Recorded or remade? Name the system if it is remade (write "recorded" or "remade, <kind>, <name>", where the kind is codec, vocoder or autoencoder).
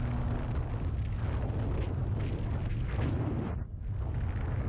recorded